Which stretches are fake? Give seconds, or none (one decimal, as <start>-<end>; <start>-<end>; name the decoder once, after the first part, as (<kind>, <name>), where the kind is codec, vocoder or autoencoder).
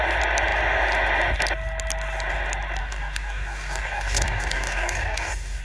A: 2.8-5.6 (codec, DAC)